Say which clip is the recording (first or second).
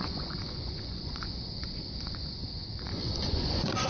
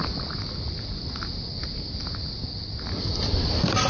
second